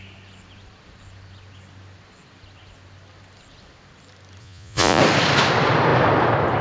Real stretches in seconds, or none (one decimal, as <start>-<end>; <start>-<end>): 0.0-4.4; 5.0-6.6